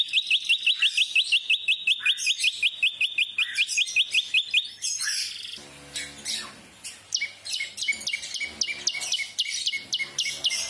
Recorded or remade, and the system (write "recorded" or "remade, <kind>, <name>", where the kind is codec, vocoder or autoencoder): recorded